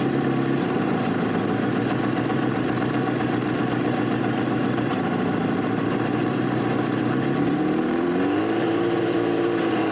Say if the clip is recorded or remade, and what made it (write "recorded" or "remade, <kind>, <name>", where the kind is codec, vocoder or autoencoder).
remade, vocoder, BigVGAN v2